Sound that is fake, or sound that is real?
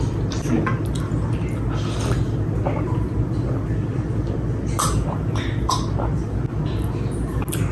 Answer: real